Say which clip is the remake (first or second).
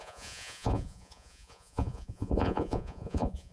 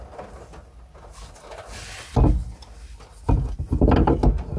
first